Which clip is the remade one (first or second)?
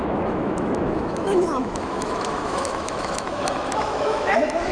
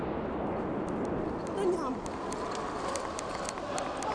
first